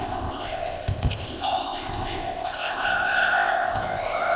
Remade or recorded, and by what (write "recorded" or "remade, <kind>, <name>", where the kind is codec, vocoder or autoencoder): remade, codec, ZipCodec